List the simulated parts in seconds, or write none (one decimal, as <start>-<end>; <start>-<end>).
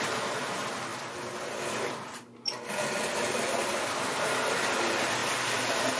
none